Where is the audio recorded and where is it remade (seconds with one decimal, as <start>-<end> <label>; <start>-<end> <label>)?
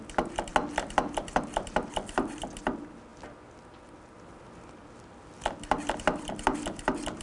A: 0.0-7.2 recorded